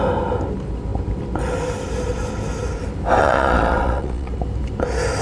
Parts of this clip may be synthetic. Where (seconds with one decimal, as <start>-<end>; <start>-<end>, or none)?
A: 3.2-4.3